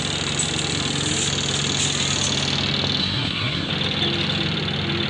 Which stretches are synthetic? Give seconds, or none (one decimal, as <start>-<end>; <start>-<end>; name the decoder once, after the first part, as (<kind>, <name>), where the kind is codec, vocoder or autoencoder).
3.0-3.7 (codec, SNAC)